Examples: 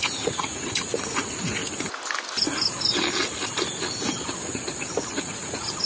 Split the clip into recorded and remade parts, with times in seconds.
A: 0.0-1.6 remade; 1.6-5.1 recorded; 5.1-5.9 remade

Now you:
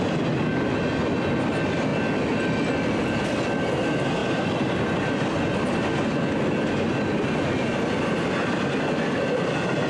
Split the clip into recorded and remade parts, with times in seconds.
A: 0.0-9.9 recorded

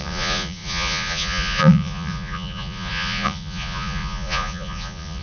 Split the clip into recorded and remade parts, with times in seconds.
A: 0.0-5.2 remade

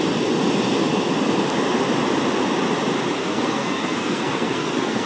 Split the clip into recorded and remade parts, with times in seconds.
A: 0.0-3.2 recorded; 3.2-5.1 remade

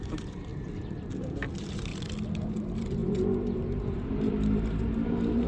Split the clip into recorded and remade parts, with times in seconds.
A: 0.0-0.5 remade; 0.5-1.2 recorded; 1.2-1.9 remade; 1.9-2.5 recorded; 2.5-5.5 remade

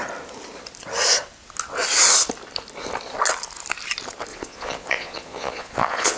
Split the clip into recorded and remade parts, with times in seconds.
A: 0.0-4.3 recorded; 4.3-6.2 remade